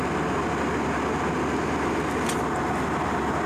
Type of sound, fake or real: real